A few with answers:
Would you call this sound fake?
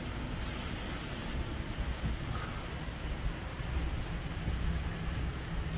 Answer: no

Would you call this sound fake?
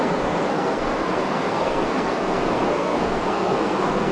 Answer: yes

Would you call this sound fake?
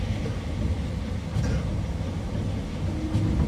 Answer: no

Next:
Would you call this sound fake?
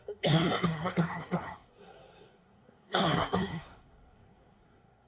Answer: yes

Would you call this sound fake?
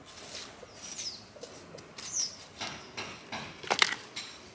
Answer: no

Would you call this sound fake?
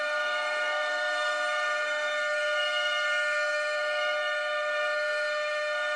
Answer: yes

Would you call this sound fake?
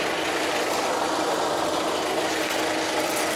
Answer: no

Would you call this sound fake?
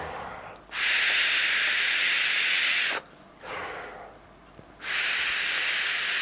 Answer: no